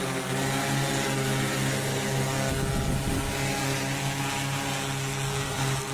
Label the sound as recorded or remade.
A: recorded